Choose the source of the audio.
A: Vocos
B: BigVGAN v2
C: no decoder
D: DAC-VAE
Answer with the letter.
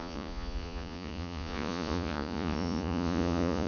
A